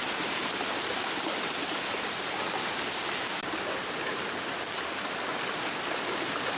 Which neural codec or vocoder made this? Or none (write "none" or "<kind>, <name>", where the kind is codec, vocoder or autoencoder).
none